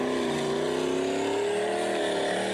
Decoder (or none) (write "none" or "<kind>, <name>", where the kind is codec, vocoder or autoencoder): none